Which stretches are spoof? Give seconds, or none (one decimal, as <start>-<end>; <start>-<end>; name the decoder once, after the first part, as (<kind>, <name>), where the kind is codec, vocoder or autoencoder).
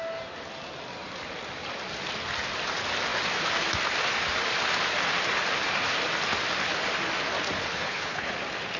7.7-8.3 (codec, HILCodec)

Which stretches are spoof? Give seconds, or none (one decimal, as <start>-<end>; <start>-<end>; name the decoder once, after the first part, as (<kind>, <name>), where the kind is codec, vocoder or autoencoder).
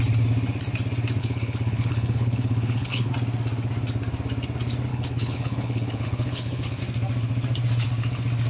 1.2-3.1 (codec, HILCodec); 4.9-6.8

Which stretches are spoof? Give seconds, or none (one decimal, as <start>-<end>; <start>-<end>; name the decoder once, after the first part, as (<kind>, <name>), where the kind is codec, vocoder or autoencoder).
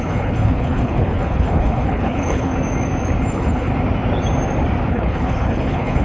0.0-2.5 (codec, HILCodec); 3.3-3.7; 4.9-6.0